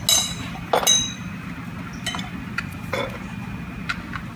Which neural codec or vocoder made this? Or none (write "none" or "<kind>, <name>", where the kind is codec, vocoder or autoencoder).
none